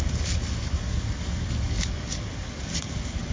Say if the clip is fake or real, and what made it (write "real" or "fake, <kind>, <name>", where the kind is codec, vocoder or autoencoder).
fake, codec, DAC